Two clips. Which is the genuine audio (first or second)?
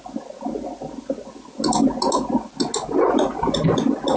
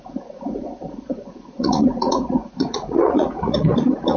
first